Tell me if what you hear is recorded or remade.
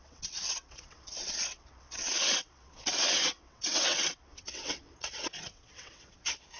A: remade